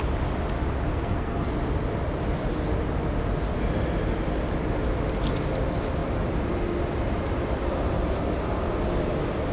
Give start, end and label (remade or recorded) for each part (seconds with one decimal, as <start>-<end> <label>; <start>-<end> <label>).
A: 0.0-0.9 recorded; 0.9-1.5 remade; 1.5-9.5 recorded